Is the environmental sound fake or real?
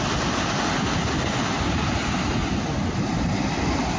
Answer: real